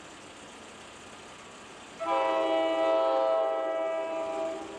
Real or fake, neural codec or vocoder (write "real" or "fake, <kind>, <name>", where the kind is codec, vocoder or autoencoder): real